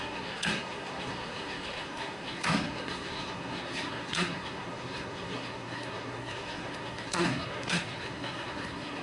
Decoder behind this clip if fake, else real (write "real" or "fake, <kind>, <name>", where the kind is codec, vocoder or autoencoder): fake, codec, SNAC